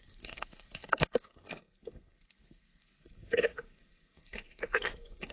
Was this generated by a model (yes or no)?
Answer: yes